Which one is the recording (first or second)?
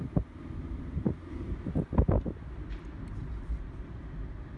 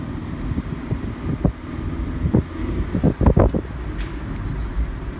second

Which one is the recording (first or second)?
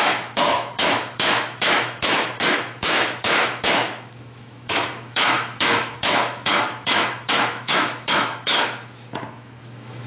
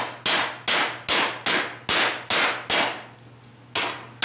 second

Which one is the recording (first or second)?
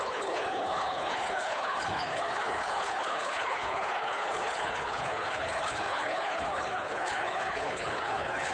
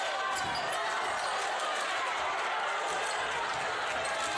second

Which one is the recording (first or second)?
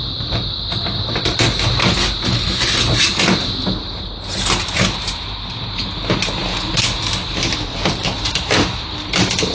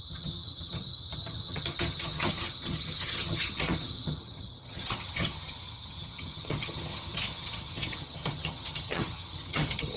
first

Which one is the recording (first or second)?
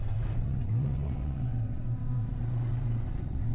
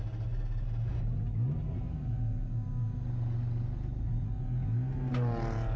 second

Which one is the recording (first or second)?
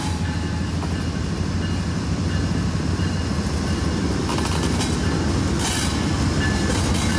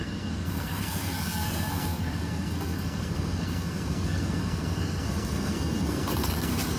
first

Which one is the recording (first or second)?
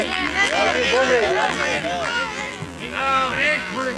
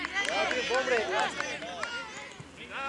second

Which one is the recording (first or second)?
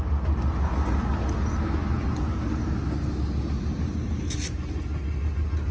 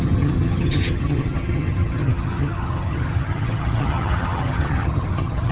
first